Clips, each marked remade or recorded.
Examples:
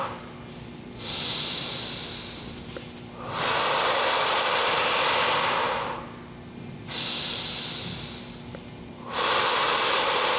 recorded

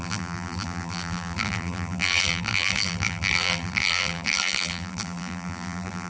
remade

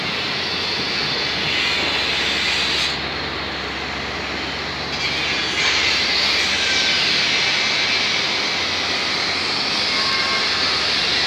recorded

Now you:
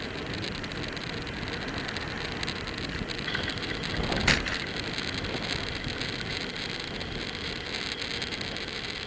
recorded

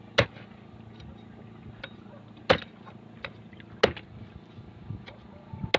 recorded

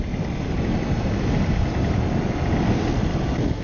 recorded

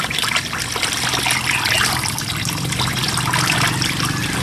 recorded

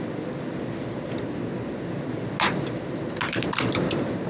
recorded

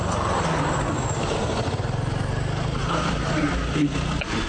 recorded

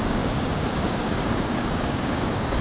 remade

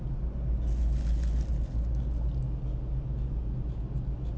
recorded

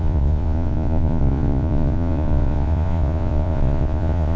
remade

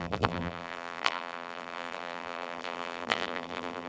remade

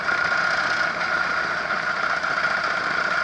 recorded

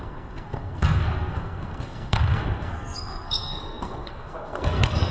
remade